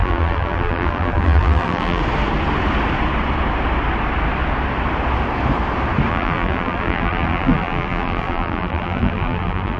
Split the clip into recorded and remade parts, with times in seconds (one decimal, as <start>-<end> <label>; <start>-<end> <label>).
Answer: 0.0-2.0 remade; 2.0-6.1 recorded; 6.1-9.8 remade